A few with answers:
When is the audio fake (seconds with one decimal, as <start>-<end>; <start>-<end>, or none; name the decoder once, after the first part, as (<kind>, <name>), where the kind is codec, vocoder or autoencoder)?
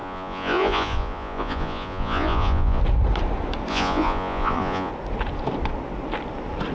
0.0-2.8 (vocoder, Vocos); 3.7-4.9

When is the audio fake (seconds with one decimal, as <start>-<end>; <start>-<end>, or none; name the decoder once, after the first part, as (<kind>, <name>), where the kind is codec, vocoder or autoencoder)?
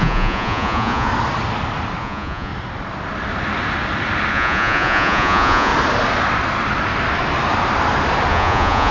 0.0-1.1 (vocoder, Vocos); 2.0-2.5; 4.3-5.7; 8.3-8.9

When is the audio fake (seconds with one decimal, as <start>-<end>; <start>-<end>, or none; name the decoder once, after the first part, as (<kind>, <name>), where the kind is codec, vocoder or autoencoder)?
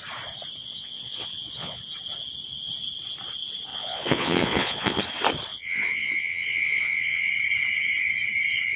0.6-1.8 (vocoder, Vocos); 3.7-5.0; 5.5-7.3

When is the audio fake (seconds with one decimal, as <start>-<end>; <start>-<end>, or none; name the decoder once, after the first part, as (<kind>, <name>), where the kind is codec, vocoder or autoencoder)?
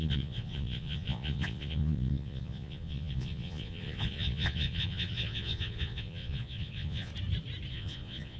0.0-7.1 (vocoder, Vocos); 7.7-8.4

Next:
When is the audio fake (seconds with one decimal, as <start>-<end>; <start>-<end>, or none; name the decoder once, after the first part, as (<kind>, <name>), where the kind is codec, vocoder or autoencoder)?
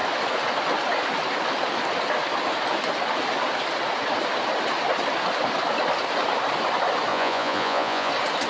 7.1-8.1 (vocoder, Vocos)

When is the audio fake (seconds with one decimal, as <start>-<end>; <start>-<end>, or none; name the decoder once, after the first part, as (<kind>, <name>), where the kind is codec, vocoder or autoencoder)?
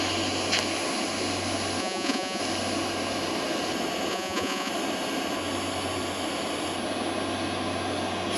1.8-2.4 (vocoder, Vocos); 4.1-4.7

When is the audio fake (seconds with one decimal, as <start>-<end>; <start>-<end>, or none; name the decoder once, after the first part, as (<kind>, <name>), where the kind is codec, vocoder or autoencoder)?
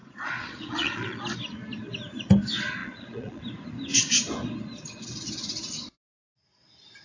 0.0-1.2 (vocoder, Vocos); 2.8-3.4